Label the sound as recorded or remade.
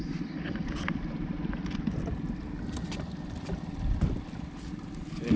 recorded